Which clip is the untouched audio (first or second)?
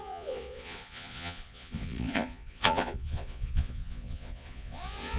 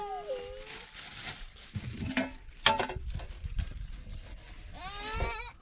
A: second